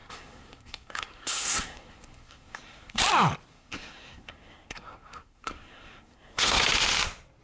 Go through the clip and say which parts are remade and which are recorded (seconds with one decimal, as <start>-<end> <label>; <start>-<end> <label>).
0.0-3.0 remade; 3.0-3.5 recorded; 3.5-6.6 remade; 6.6-7.4 recorded